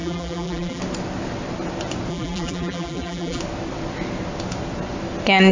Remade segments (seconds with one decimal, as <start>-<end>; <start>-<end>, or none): 0.0-0.8; 2.1-3.4